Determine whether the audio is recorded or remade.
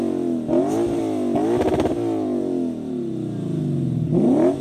recorded